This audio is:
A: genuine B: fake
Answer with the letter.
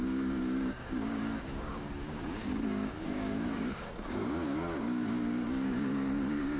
B